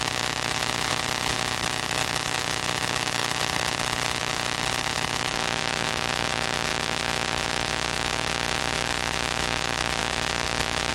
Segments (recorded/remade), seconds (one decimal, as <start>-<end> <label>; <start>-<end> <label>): 0.0-10.9 remade